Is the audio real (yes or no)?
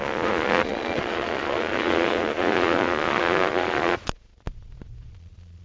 no